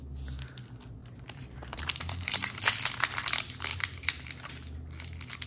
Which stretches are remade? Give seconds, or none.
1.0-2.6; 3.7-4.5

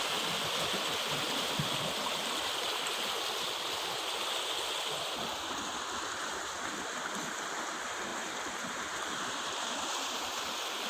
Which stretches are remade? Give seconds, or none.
8.1-10.9

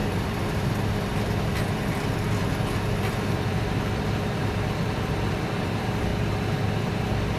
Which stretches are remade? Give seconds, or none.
0.0-6.1

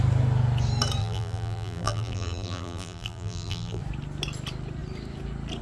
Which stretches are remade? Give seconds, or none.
1.0-3.8

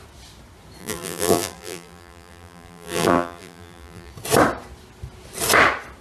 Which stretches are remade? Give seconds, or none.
0.8-4.1